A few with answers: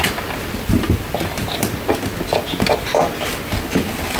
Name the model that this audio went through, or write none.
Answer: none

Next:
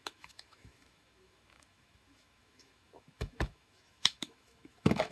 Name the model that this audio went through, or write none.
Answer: autoencoder, DAC-VAE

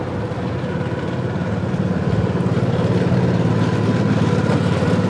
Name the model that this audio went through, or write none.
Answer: none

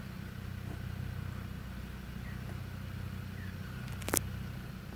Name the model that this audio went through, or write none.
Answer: none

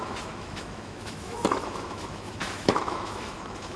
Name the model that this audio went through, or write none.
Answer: autoencoder, DAC-VAE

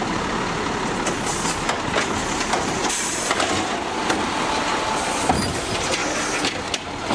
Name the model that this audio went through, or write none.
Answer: none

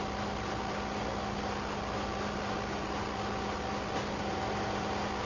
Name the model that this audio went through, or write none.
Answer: none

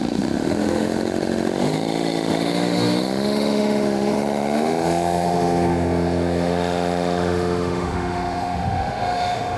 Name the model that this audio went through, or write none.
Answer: autoencoder, DAC-VAE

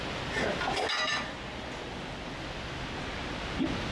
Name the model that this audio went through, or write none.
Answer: none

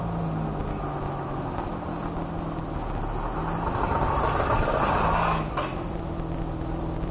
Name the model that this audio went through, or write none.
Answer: none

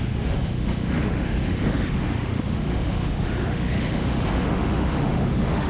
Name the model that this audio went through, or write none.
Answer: autoencoder, DAC-VAE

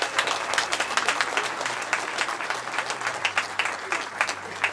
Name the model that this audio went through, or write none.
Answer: none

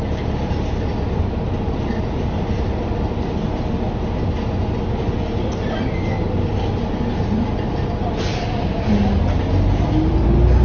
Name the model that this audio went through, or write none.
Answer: none